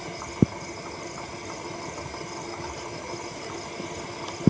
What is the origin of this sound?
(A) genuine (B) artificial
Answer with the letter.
A